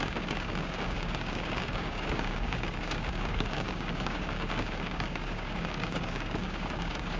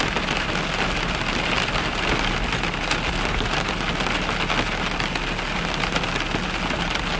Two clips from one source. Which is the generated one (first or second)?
first